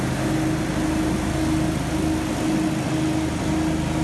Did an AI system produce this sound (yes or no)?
no